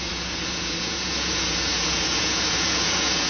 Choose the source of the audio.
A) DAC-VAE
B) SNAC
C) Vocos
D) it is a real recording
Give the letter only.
C